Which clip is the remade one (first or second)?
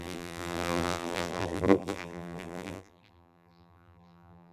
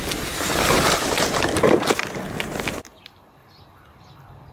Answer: first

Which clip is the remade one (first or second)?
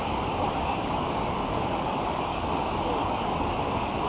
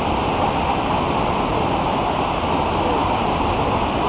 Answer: first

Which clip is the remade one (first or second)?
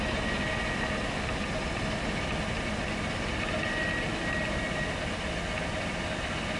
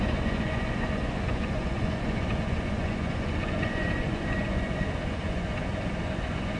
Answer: second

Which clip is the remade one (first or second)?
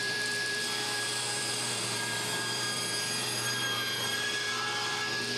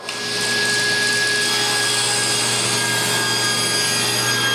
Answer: first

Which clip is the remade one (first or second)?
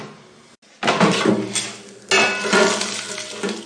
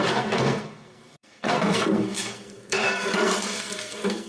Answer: second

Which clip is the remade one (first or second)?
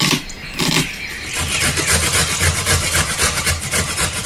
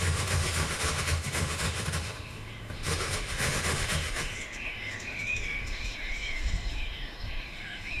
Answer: second